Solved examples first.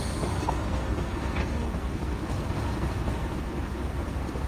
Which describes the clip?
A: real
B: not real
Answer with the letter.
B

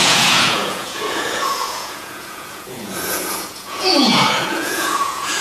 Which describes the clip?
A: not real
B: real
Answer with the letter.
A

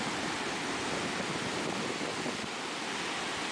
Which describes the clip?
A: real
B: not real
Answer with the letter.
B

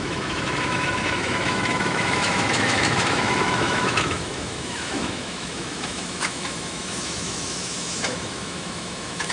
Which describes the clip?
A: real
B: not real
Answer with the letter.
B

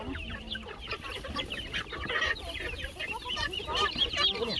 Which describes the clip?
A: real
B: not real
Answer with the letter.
A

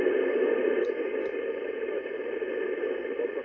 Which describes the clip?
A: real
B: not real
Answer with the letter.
B